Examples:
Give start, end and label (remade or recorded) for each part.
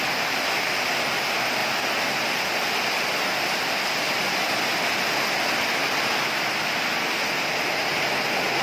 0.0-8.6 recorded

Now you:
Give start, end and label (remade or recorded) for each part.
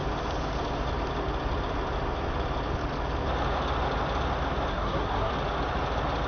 0.0-4.7 recorded; 4.7-5.3 remade; 5.3-6.3 recorded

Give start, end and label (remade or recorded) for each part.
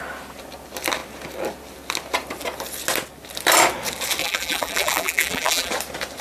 0.0-4.2 recorded; 4.2-5.7 remade; 5.7-6.2 recorded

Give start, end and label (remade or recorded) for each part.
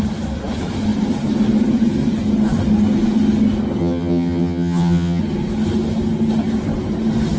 0.0-3.8 recorded; 3.8-5.2 remade; 5.2-7.4 recorded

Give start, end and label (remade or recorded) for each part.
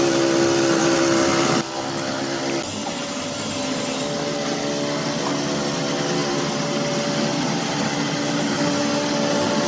0.0-9.7 recorded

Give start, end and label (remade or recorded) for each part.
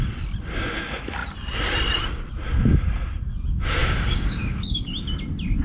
0.0-3.8 recorded; 3.8-4.9 remade; 4.9-5.6 recorded